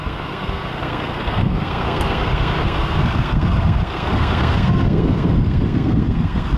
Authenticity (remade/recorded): remade